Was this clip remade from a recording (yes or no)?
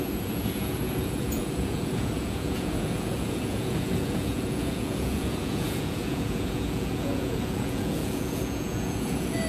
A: yes